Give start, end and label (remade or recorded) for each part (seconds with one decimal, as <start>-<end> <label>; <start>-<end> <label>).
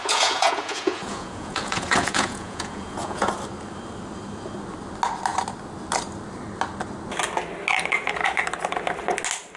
0.0-3.3 remade; 3.3-9.6 recorded